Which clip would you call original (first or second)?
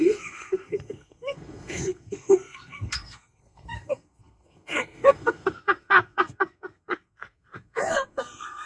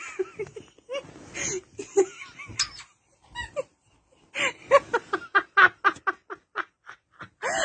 second